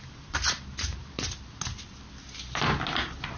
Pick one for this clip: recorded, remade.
recorded